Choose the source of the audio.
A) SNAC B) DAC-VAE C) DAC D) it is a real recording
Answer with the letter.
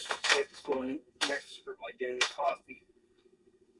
A